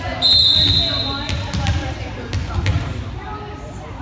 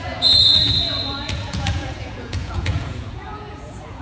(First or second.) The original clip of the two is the first